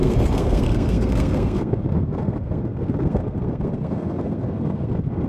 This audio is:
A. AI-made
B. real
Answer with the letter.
A